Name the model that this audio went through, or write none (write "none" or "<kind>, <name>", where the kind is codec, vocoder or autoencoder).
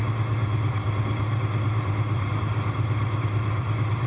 vocoder, BigVGAN v2